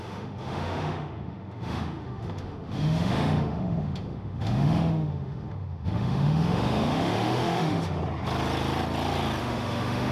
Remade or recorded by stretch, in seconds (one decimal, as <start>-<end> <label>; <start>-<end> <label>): 0.0-8.0 remade; 8.0-9.4 recorded; 9.4-10.1 remade

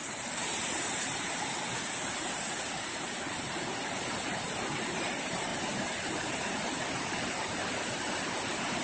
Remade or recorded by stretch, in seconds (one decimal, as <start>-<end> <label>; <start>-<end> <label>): 0.0-5.5 remade; 5.5-6.8 recorded; 6.8-8.8 remade